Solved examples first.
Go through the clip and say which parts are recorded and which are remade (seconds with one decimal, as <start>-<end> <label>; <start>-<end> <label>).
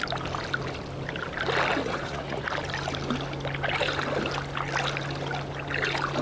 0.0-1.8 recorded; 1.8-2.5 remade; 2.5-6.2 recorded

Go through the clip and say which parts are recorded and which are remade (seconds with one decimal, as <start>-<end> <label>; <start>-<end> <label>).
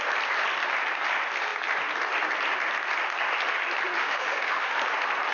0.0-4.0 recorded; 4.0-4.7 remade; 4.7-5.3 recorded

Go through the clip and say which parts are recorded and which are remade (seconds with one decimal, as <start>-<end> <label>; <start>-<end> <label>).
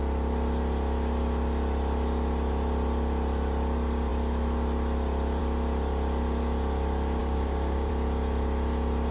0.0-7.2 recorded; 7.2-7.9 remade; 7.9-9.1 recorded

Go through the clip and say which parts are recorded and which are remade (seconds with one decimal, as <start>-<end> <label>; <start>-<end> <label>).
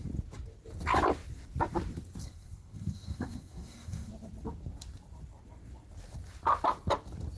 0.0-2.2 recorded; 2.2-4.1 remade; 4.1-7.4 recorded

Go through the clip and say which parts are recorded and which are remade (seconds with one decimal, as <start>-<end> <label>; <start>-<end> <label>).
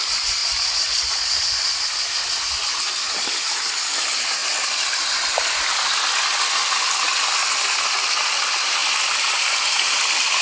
0.0-10.4 recorded